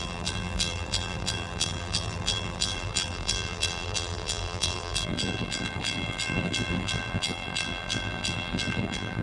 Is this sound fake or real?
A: fake